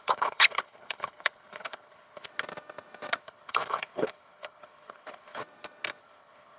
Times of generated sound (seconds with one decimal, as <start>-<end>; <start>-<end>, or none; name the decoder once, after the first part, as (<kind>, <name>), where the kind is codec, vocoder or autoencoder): 0.0-2.3 (codec, HILCodec); 3.2-5.4; 6.0-6.6